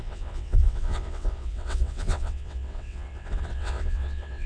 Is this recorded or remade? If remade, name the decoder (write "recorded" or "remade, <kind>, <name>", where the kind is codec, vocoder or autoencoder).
remade, vocoder, WaveNeXt